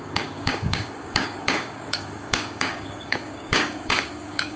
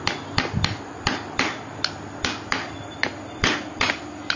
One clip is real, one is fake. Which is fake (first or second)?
first